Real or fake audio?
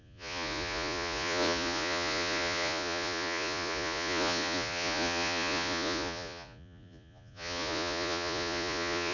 fake